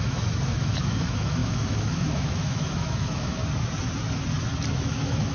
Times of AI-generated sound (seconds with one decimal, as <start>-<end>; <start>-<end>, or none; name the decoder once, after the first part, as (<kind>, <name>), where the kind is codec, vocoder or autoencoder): 0.0-3.4 (autoencoder, DAC-VAE); 4.8-5.3